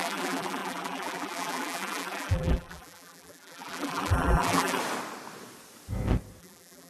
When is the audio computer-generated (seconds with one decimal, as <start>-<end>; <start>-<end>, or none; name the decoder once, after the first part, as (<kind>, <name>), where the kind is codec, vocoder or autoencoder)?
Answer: 0.0-4.8 (vocoder, BigVGAN v2); 6.4-6.9